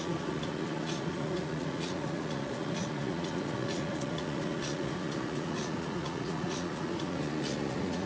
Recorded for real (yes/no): no